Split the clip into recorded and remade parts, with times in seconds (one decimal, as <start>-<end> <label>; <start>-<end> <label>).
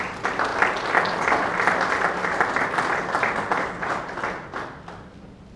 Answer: 0.0-5.6 recorded